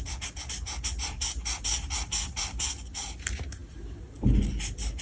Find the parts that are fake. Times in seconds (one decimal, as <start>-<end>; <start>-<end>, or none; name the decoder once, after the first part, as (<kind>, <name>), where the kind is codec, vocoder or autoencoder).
none